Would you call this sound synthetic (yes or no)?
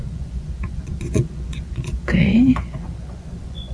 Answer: yes